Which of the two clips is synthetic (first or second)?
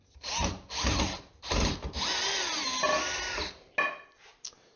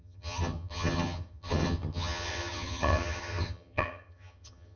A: second